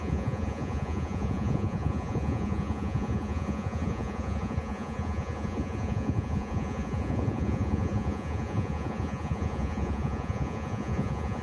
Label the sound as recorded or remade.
remade